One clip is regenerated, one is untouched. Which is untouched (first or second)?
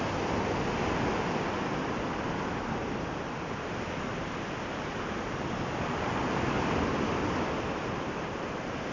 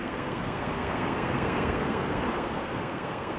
first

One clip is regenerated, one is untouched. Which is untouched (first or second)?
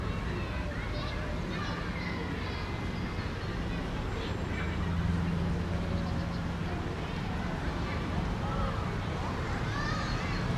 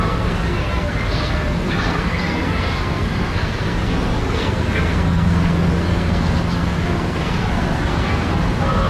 first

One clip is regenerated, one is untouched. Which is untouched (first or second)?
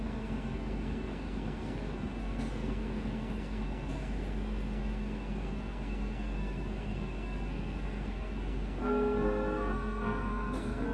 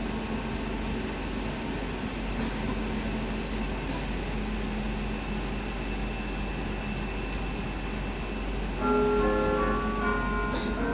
second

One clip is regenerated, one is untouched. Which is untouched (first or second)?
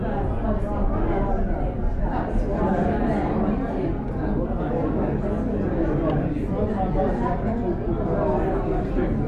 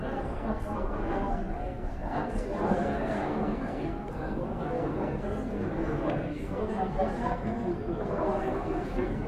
first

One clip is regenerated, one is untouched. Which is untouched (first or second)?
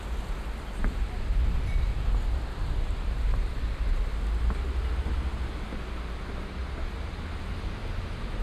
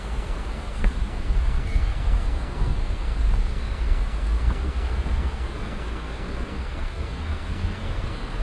first